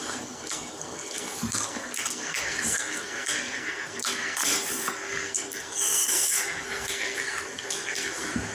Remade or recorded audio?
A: remade